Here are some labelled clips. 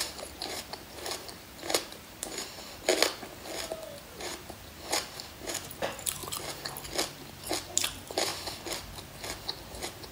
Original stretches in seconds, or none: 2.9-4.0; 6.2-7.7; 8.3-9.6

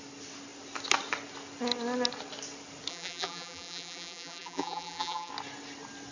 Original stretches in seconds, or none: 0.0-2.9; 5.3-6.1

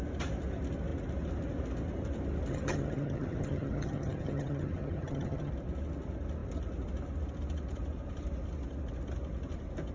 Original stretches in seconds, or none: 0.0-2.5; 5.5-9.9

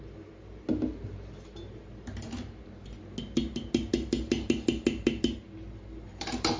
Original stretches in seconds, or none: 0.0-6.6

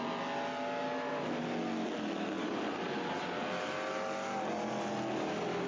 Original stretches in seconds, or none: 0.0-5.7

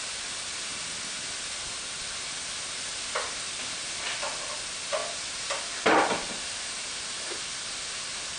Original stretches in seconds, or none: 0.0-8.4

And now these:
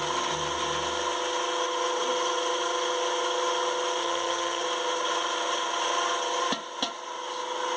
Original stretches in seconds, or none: 0.0-4.0; 4.6-7.8